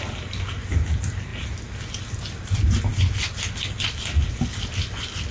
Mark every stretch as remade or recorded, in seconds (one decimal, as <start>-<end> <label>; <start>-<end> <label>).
0.0-5.3 recorded